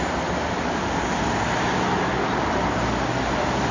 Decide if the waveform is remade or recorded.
recorded